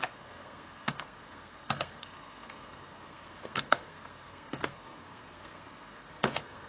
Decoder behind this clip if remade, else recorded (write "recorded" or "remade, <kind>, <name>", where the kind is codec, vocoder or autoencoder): remade, codec, SNAC